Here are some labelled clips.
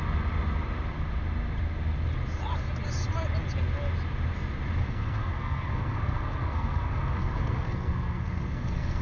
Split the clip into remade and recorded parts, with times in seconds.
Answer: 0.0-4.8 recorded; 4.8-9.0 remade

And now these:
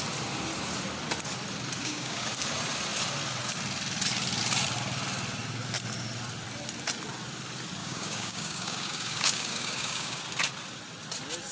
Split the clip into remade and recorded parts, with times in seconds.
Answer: 0.0-1.8 recorded; 1.8-2.3 remade; 2.3-7.8 recorded; 7.8-10.2 remade; 10.2-11.5 recorded

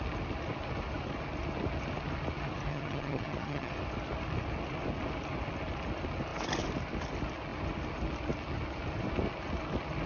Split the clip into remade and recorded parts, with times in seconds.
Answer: 0.0-2.7 recorded; 2.7-3.7 remade; 3.7-10.1 recorded

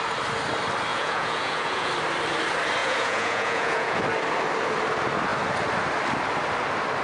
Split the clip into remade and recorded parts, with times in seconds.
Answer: 0.0-0.9 recorded; 0.9-1.9 remade; 1.9-2.8 recorded; 2.8-4.0 remade; 4.0-7.0 recorded